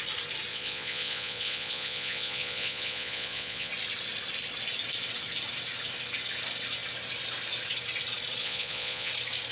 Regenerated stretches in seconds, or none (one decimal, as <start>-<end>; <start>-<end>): 0.5-3.7; 8.4-9.1